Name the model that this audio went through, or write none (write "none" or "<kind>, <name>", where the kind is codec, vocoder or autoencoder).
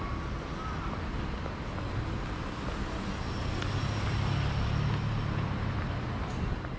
none